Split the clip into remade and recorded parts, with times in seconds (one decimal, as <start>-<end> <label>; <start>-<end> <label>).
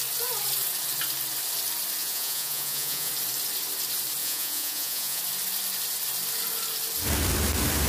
0.0-2.0 recorded; 2.0-3.1 remade; 3.1-4.2 recorded; 4.2-5.2 remade; 5.2-7.9 recorded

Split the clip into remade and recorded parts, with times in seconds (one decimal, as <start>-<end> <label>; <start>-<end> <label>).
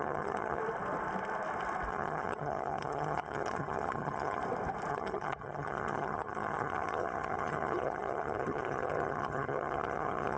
0.0-0.6 remade; 0.6-1.9 recorded; 1.9-4.4 remade; 4.4-4.9 recorded; 4.9-10.4 remade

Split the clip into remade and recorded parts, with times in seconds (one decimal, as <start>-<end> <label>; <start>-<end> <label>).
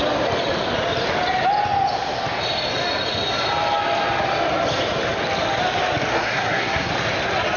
0.0-6.1 recorded; 6.1-6.9 remade; 6.9-7.6 recorded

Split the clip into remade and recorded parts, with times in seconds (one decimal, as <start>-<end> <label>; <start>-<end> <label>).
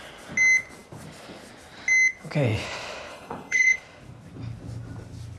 0.0-3.1 recorded; 3.1-3.8 remade; 3.8-5.4 recorded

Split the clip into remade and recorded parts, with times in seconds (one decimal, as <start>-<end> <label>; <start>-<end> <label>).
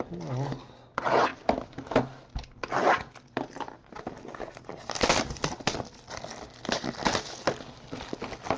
0.0-8.6 recorded